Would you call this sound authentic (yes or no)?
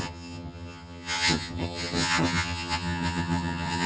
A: no